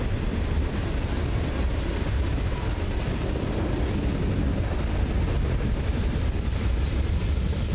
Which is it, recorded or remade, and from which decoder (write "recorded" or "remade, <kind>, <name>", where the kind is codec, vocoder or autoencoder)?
recorded